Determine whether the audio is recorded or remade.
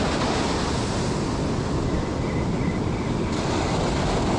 recorded